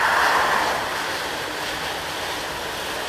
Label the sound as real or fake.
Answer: real